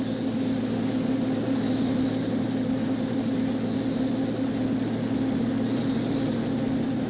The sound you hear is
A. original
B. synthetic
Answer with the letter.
A